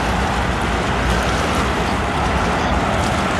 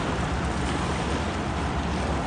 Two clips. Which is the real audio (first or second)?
first